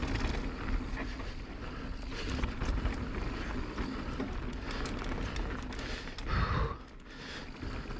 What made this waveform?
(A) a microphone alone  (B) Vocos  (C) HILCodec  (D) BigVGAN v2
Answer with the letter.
A